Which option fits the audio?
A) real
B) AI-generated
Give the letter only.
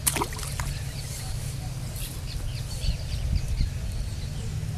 A